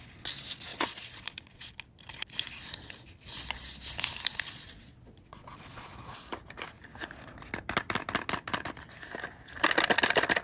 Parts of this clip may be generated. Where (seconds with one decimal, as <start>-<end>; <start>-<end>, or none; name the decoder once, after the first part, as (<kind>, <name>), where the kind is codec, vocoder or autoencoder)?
0.7-1.7 (vocoder, Vocos); 4.3-5.9